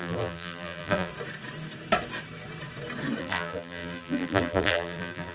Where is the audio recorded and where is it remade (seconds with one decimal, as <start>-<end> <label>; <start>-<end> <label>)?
0.0-1.1 remade; 1.1-3.2 recorded; 3.2-5.3 remade